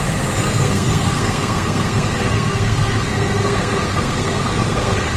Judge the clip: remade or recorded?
remade